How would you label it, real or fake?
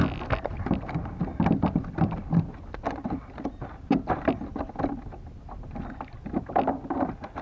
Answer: real